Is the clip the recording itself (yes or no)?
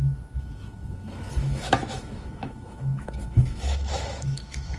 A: no